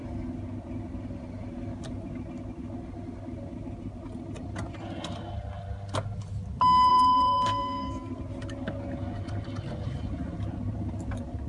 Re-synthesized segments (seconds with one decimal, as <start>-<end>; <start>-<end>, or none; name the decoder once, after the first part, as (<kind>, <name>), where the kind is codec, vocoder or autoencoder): 6.9-8.1 (codec, SNAC)